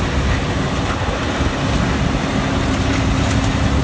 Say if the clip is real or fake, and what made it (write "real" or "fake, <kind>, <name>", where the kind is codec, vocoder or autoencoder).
real